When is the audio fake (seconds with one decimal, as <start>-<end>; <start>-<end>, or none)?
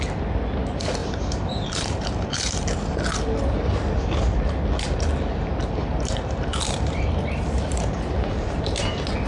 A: 1.0-2.9; 5.6-8.8